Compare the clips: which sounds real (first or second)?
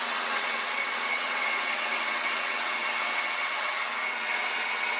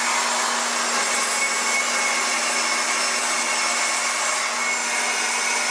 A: second